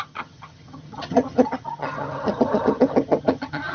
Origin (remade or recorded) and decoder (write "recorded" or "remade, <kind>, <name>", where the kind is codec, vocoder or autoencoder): remade, vocoder, HiFi-GAN